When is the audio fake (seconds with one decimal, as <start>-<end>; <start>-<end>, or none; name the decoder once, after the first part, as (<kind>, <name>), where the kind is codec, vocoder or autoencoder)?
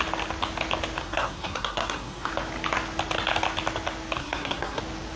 1.0-2.3 (codec, SNAC); 4.2-4.8